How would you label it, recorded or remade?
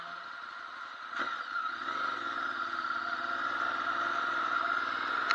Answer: recorded